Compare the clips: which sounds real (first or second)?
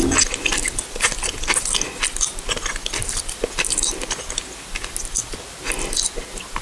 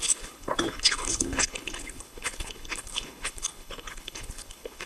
first